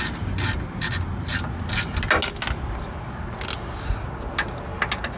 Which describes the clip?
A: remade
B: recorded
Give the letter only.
B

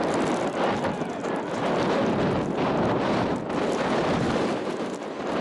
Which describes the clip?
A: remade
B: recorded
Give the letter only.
B